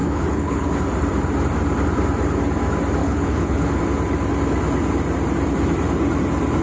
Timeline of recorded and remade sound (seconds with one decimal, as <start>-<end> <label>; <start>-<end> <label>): 0.0-0.7 remade; 0.7-3.0 recorded; 3.0-3.8 remade; 3.8-6.6 recorded